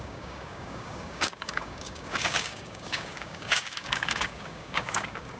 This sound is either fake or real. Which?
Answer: fake